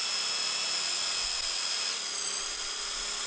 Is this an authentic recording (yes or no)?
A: yes